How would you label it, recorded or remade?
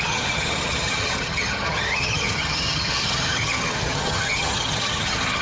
remade